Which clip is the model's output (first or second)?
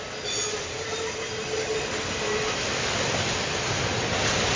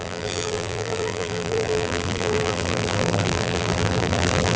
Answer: second